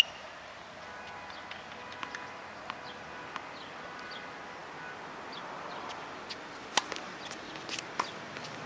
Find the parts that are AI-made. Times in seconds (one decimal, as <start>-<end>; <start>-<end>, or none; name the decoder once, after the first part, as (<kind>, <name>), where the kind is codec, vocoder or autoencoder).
none